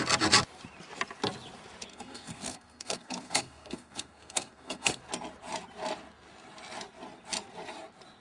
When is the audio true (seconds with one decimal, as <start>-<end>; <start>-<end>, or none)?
0.0-1.9; 5.0-8.2

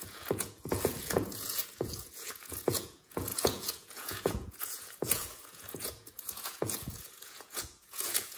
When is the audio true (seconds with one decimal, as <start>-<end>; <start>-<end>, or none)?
none

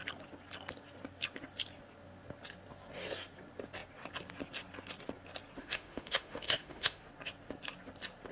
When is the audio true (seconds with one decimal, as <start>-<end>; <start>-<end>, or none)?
0.0-5.6; 7.0-8.3

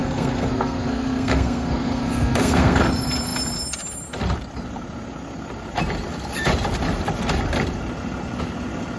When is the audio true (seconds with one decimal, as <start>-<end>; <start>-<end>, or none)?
2.8-9.0

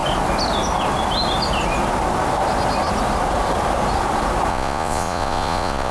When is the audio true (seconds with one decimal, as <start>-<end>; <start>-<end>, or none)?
0.0-4.5

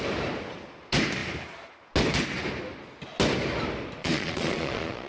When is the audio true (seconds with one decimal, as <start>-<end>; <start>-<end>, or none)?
0.0-4.0

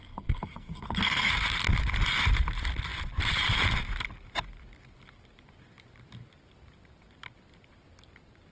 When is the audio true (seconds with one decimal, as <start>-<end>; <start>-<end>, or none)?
1.3-8.5